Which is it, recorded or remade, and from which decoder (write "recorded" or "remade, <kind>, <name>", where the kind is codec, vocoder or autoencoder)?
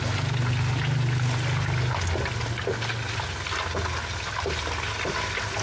recorded